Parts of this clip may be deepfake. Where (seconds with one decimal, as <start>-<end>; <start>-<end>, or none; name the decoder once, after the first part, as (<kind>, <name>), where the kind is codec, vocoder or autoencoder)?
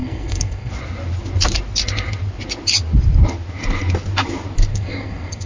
0.0-0.7 (codec, SNAC); 4.7-5.5